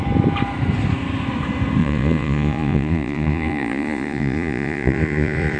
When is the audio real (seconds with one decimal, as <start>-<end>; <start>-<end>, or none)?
0.0-1.8